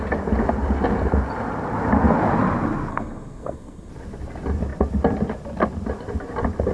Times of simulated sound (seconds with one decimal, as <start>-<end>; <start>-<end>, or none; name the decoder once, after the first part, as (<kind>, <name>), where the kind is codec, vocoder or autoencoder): 2.9-3.9 (codec, SNAC)